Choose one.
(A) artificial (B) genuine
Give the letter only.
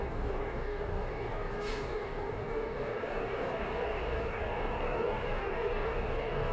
A